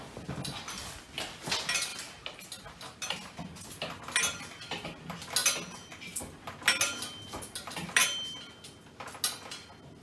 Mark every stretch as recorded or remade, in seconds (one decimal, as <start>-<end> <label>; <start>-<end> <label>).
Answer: 0.0-10.0 recorded